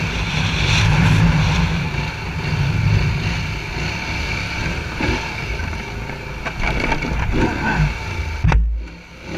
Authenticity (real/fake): real